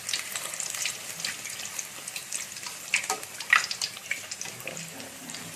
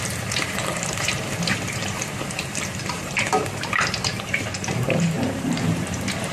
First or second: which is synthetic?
second